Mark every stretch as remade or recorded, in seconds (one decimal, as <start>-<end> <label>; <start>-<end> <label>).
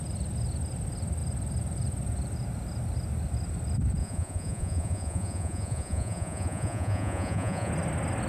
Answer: 0.0-4.0 recorded; 4.0-7.7 remade; 7.7-8.3 recorded